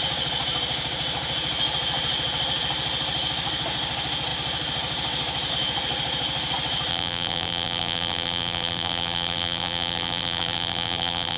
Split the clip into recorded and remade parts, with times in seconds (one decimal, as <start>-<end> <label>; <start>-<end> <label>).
0.0-6.9 recorded; 6.9-11.4 remade